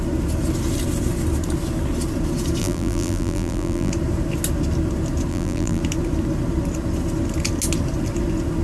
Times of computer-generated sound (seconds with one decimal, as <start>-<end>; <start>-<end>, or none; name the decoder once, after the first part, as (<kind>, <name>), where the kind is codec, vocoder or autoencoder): 2.6-3.9 (vocoder, BigVGAN v2); 5.3-5.8